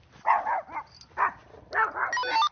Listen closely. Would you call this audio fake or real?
real